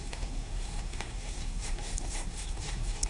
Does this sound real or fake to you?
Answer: fake